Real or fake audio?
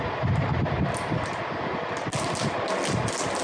real